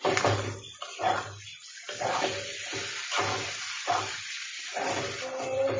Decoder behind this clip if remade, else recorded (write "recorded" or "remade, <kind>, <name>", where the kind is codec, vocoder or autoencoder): recorded